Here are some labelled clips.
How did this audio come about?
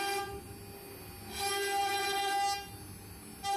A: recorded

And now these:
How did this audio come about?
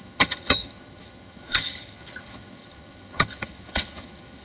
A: remade